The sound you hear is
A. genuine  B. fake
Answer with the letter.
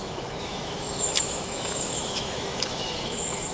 B